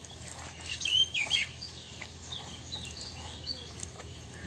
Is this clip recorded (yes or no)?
no